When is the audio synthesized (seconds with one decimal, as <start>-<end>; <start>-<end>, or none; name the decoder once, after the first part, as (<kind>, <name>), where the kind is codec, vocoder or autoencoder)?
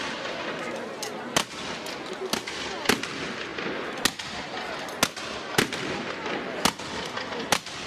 none